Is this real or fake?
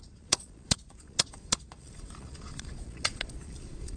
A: fake